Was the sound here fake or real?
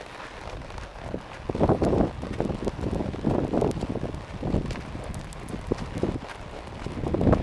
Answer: real